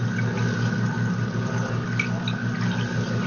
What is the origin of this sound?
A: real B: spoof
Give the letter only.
A